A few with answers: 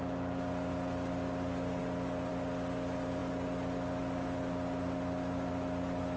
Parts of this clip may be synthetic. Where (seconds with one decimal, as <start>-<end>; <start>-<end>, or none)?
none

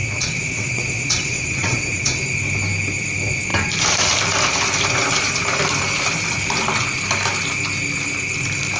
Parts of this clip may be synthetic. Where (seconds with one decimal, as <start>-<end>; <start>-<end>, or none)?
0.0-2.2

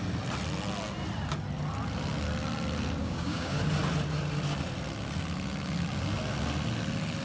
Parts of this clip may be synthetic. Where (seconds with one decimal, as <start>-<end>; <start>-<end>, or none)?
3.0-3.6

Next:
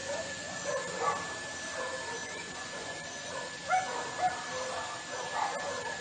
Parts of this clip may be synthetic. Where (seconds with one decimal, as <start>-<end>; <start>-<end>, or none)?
0.0-1.1; 2.2-3.4